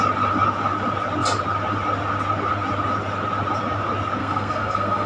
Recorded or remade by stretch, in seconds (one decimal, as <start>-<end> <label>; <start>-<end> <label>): 0.0-4.2 recorded; 4.2-5.1 remade